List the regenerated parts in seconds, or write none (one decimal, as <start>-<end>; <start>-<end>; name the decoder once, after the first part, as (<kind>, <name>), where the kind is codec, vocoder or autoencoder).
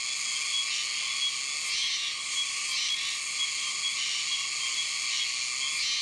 none